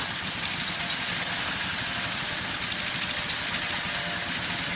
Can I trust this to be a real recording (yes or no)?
yes